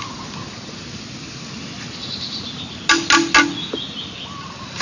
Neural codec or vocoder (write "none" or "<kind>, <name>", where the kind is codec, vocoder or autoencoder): none